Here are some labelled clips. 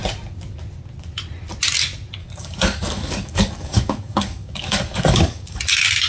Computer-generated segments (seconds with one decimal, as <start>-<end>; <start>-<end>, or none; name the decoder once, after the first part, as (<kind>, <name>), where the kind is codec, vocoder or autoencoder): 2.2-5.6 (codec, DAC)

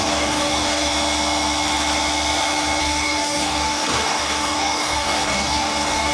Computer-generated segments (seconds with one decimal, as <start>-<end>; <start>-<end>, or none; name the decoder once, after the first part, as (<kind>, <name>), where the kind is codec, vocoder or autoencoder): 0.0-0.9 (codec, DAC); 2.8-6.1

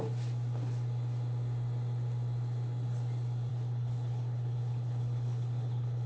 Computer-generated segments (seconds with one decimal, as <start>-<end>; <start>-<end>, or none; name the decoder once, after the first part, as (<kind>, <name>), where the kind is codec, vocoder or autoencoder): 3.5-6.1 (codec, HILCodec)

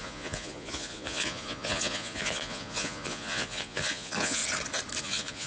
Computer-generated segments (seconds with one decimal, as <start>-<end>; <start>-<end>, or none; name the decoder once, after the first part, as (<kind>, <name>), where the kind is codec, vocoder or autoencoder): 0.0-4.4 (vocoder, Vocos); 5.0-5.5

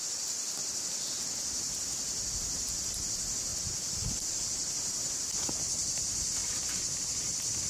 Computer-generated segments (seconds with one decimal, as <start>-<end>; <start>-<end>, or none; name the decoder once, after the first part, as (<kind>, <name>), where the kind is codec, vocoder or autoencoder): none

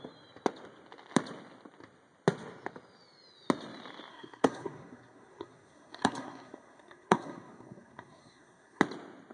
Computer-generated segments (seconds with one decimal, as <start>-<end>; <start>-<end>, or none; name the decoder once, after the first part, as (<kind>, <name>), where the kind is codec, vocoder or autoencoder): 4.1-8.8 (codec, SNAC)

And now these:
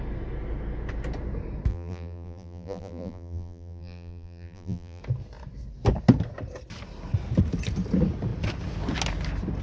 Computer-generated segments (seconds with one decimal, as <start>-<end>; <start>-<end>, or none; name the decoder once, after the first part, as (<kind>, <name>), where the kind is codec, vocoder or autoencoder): 1.7-5.0 (vocoder, BigVGAN v2)